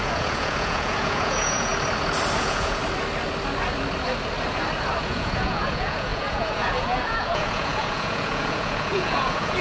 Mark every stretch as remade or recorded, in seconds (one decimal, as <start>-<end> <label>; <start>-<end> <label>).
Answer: 0.0-1.7 remade; 1.7-2.4 recorded; 2.4-2.8 remade; 2.8-5.0 recorded; 5.0-9.6 remade